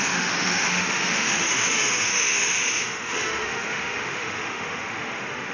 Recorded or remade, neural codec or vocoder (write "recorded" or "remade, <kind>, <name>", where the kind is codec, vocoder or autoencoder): remade, autoencoder, DAC-VAE